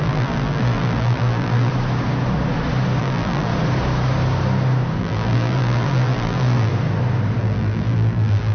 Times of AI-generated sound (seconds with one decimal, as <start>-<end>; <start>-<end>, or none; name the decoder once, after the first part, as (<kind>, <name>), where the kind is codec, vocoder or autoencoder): 0.0-1.7 (vocoder, BigVGAN v2); 3.0-3.5; 5.0-6.7; 7.4-8.5